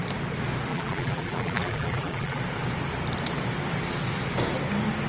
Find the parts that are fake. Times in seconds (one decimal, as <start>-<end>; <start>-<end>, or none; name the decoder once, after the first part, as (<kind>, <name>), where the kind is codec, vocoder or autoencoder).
0.7-2.4 (vocoder, BigVGAN v2)